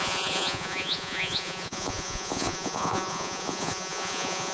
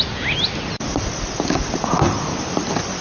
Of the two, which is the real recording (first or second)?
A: second